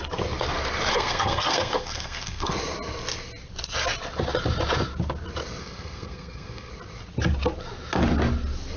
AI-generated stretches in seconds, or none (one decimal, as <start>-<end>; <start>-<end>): 0.9-2.5; 5.6-6.7